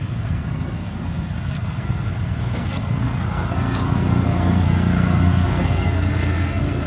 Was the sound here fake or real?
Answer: fake